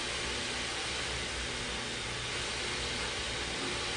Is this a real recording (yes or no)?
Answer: yes